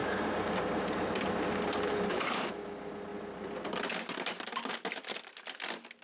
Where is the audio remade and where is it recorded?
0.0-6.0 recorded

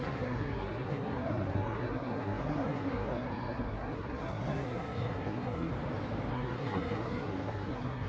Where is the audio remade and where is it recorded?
0.0-5.7 remade; 5.7-6.3 recorded; 6.3-8.1 remade

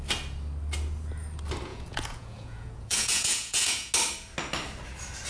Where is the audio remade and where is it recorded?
0.0-1.7 recorded; 1.7-3.9 remade; 3.9-5.3 recorded

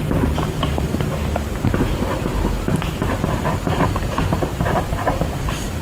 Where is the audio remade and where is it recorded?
0.0-2.3 remade; 2.3-4.0 recorded; 4.0-5.8 remade